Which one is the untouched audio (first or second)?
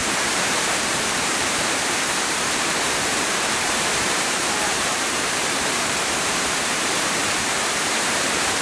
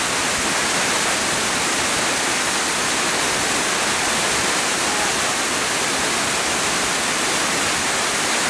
second